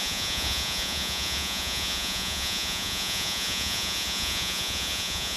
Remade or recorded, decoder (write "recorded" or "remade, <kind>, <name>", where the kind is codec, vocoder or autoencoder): remade, vocoder, Vocos